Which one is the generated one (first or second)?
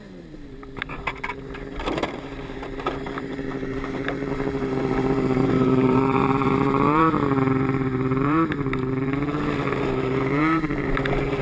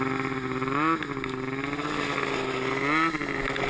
first